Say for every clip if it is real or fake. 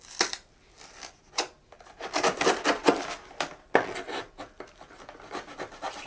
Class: real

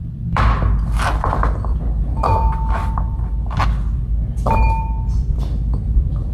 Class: fake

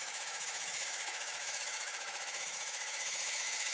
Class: fake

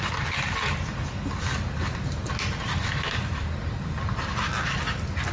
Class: real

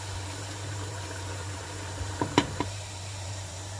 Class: fake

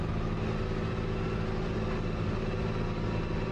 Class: real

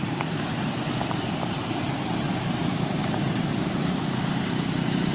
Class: fake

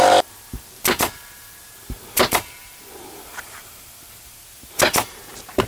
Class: fake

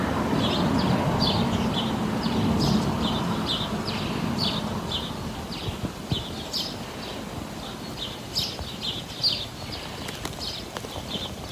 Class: real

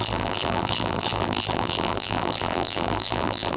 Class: fake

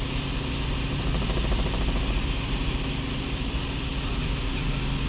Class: real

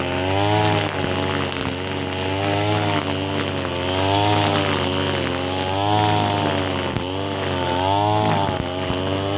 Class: real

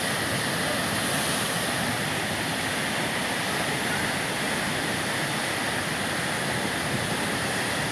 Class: real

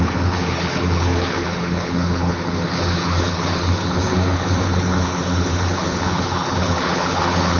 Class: fake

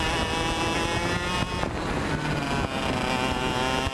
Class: real